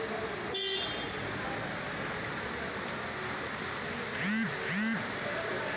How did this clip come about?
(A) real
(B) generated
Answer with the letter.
A